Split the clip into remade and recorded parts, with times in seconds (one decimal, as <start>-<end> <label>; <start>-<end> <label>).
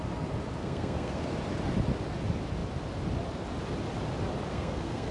0.0-0.6 recorded; 0.6-1.3 remade; 1.3-4.5 recorded; 4.5-5.1 remade